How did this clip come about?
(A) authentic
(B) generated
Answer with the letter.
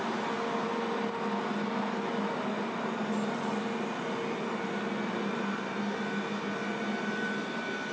A